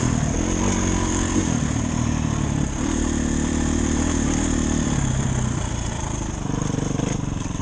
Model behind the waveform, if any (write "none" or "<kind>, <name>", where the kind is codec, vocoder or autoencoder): vocoder, BigVGAN v2